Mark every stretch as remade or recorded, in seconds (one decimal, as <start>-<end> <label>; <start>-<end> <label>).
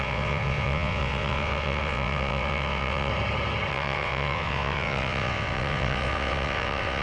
0.0-3.1 remade; 3.1-3.7 recorded; 3.7-7.0 remade